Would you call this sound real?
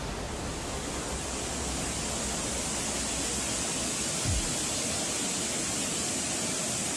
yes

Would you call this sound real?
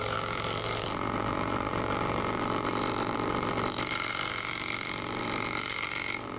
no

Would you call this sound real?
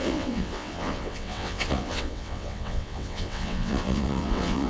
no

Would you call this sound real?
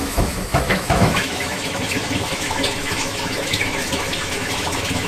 no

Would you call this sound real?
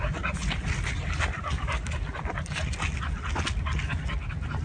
yes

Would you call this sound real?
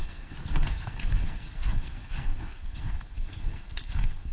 no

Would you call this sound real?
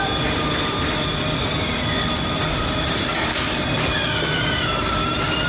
yes